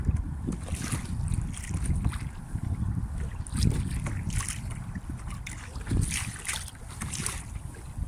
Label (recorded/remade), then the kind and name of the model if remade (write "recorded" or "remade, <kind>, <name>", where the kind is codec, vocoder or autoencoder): recorded